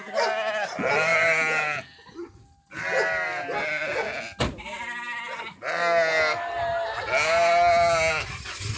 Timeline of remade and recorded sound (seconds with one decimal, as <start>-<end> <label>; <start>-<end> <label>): 0.0-8.8 recorded